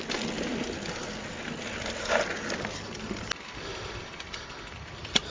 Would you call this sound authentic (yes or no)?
yes